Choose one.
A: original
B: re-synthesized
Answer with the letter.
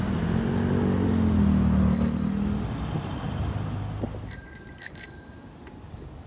A